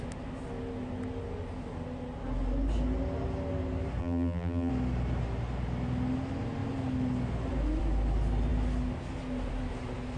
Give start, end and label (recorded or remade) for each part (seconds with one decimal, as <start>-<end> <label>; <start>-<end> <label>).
0.0-4.0 recorded; 4.0-4.7 remade; 4.7-10.2 recorded